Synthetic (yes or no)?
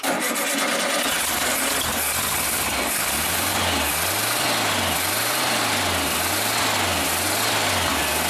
no